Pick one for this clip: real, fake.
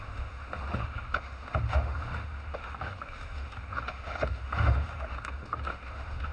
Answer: fake